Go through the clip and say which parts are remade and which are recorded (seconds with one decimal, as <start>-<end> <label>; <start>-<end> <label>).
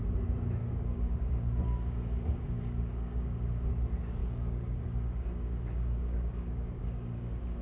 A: 0.0-0.6 recorded; 0.6-3.7 remade; 3.7-4.2 recorded; 4.2-7.6 remade